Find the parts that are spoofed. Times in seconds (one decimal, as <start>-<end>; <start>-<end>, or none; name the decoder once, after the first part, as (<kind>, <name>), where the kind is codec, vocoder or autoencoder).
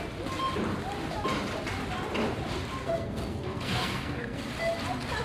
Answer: 2.8-4.5 (codec, SNAC)